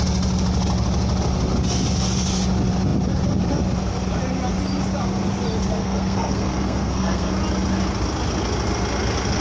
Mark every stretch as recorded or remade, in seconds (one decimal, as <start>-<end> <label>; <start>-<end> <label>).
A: 0.0-5.8 recorded; 5.8-7.3 remade; 7.3-9.4 recorded